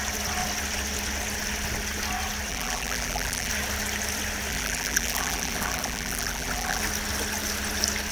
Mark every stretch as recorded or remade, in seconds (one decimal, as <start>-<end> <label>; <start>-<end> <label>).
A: 0.0-2.5 recorded; 2.5-3.5 remade; 3.5-4.5 recorded; 4.5-6.8 remade; 6.8-8.1 recorded